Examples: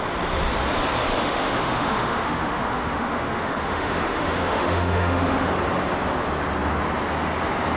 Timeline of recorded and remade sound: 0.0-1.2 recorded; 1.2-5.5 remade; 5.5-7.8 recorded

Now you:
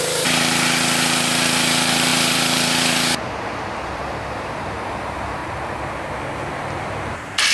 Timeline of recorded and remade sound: 0.0-5.4 remade; 5.4-6.5 recorded; 6.5-7.5 remade

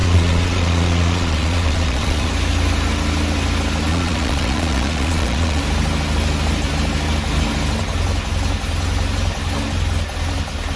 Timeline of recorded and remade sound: 0.0-2.3 remade; 2.3-3.9 recorded; 3.9-5.6 remade; 5.6-10.8 recorded

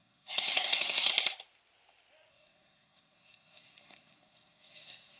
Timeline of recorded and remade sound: 0.0-1.1 remade; 1.1-2.3 recorded; 2.3-5.2 remade

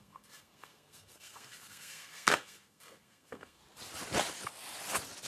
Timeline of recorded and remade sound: 0.0-3.6 remade; 3.6-5.3 recorded

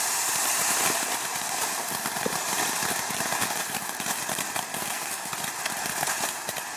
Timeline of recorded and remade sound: 0.0-4.7 recorded; 4.7-5.3 remade; 5.3-6.8 recorded